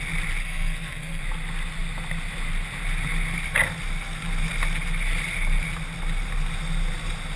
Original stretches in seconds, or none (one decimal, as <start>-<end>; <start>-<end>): 0.0-0.4; 1.2-7.4